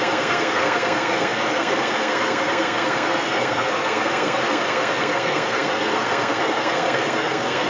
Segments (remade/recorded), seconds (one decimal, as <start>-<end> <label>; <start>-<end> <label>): 0.0-7.7 remade